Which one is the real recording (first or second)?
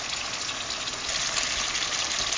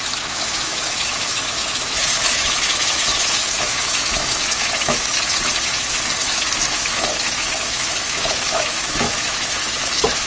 first